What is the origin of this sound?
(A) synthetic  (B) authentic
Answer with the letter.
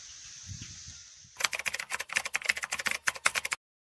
B